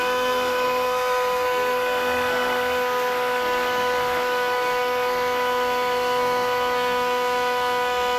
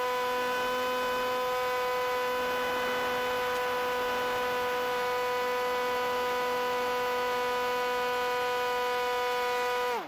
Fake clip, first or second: first